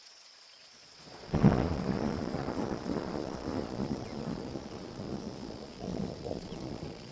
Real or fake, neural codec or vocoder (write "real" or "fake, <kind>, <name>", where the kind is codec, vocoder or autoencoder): fake, vocoder, Vocos